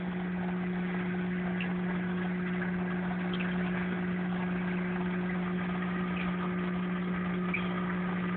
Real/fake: real